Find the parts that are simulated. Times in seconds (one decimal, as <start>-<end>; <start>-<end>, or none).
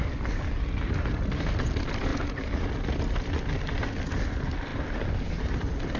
none